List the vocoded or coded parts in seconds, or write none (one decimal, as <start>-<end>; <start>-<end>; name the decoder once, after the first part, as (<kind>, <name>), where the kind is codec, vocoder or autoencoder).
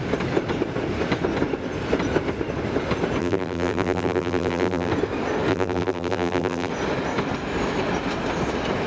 3.2-4.9 (vocoder, BigVGAN v2); 5.5-6.7